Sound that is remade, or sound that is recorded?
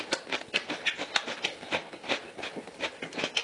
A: recorded